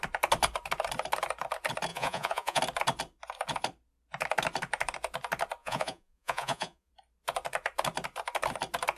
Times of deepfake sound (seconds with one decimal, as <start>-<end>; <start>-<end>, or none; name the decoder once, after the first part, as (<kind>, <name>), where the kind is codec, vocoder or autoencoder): 1.9-2.6 (vocoder, Vocos); 5.6-6.9